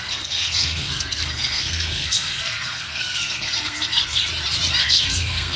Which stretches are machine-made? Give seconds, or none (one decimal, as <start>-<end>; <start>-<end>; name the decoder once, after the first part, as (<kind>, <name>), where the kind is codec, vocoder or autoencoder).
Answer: 0.0-4.2 (codec, SNAC); 4.8-5.6